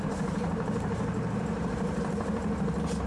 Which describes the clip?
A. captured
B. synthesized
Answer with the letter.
B